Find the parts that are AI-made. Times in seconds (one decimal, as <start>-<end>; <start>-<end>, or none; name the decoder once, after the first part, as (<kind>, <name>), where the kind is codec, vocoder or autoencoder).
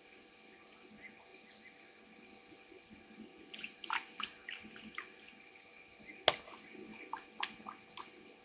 none